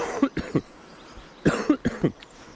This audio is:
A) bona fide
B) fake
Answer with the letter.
A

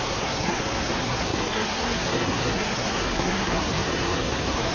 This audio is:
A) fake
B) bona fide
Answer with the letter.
A